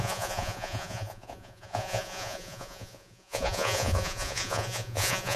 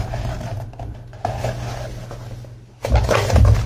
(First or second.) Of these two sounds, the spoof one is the first